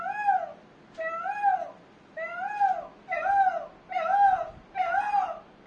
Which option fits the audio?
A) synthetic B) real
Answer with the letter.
B